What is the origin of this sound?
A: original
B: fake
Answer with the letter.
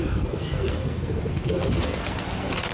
B